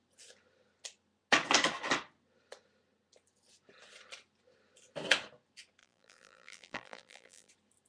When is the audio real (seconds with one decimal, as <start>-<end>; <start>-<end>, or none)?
0.0-5.8; 7.5-7.9

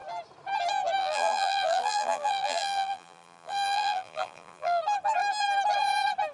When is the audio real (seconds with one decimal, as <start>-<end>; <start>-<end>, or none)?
0.0-1.0; 4.8-6.3

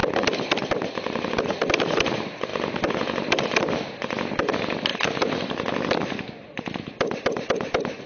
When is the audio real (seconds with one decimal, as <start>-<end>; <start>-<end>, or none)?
0.0-4.9; 6.2-8.1

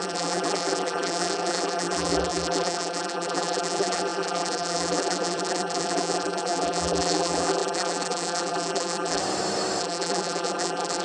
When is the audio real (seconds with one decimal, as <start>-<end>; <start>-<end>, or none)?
9.2-9.8

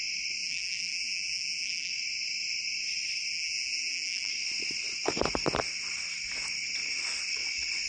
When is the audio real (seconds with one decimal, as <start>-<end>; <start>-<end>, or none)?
0.0-0.4; 1.9-3.3; 4.3-7.9

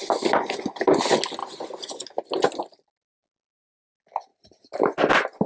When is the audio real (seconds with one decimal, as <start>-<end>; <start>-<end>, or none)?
0.0-4.3; 5.1-5.5

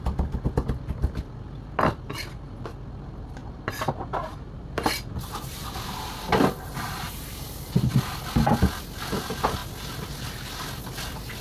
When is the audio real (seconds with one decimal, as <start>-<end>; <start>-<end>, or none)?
0.0-3.4; 7.9-11.4